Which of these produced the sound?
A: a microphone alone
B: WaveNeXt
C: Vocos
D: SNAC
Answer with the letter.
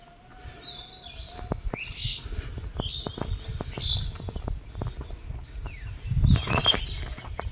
A